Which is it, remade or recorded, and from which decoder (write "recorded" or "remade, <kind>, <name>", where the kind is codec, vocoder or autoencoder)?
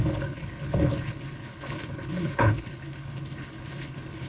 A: remade, codec, HILCodec